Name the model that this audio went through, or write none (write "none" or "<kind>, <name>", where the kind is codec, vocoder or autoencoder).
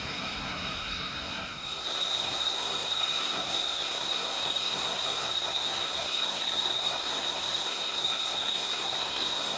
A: codec, SNAC